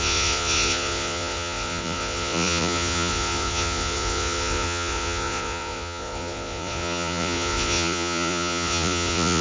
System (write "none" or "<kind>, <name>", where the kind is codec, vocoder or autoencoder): vocoder, Vocos